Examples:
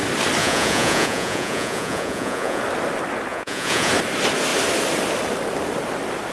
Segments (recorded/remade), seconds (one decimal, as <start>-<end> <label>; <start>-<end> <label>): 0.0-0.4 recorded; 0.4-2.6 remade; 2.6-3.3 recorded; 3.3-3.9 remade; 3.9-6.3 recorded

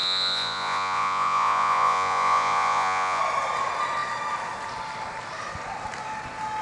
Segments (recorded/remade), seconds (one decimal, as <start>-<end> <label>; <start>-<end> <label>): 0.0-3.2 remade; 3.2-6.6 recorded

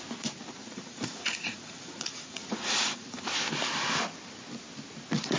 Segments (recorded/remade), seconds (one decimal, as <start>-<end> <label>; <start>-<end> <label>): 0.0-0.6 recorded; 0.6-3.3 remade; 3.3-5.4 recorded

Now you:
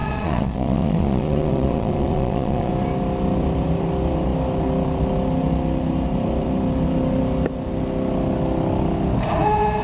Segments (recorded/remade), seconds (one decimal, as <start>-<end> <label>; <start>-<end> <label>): 0.0-2.7 remade; 2.7-9.8 recorded

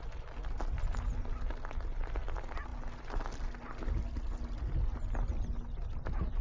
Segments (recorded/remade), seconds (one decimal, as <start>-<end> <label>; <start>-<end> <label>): 0.0-6.4 recorded

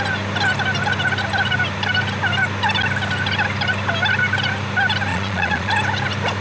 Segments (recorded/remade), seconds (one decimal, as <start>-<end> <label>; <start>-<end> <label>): 0.0-5.1 recorded; 5.1-5.7 remade; 5.7-6.4 recorded

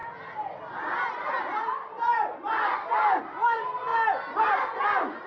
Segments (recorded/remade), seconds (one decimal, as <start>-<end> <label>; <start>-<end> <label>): 0.0-5.3 recorded

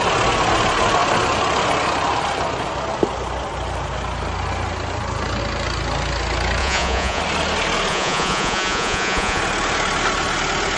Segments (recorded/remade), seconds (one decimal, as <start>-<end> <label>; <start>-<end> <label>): 0.0-6.6 recorded; 6.6-7.2 remade; 7.2-7.9 recorded; 7.9-9.4 remade; 9.4-10.8 recorded